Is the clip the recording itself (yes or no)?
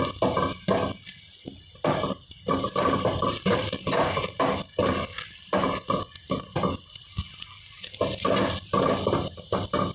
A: yes